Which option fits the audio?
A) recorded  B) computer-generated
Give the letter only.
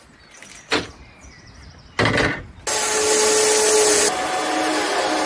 A